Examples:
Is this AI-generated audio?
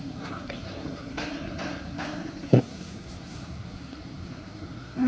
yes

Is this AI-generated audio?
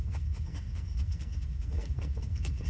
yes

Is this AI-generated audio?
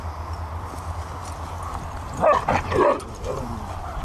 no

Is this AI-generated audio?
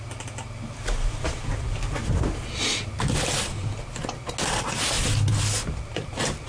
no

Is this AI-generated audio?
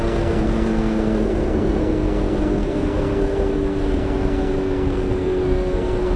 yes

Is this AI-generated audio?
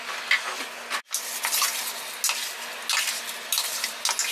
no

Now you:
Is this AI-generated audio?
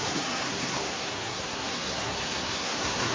yes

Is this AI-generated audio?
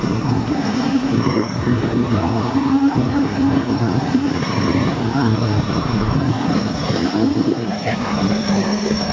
yes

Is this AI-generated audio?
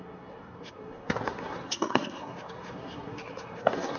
yes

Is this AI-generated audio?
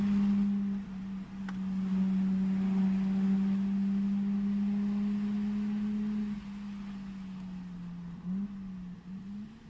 no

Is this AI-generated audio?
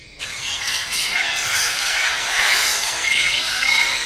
yes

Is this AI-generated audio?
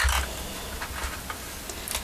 no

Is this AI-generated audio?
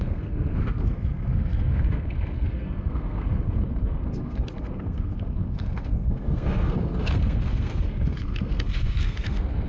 yes